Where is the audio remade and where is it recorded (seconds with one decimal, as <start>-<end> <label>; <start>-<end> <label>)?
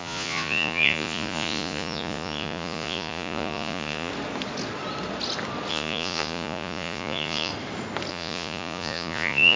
0.0-4.1 remade; 4.1-5.7 recorded; 5.7-7.5 remade; 7.5-8.1 recorded; 8.1-9.6 remade